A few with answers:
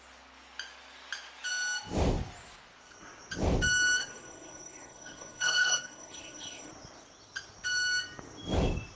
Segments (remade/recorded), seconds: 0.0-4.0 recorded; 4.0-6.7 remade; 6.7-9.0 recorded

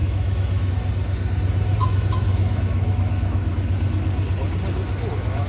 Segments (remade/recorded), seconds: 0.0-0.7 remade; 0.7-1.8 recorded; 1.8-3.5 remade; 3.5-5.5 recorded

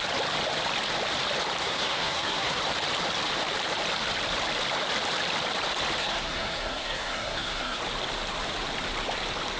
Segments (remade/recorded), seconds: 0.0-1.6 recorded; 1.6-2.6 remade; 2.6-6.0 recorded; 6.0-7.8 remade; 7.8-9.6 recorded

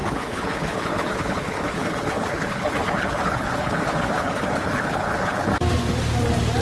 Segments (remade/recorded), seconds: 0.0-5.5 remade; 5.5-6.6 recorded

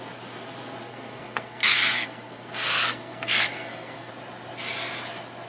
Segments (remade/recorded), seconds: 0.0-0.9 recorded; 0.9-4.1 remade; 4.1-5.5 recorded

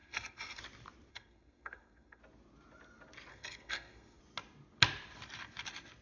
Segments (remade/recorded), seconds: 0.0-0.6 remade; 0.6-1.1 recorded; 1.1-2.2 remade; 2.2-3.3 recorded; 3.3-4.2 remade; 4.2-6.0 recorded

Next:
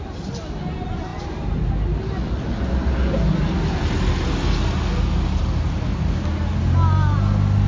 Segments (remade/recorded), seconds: 0.0-7.7 recorded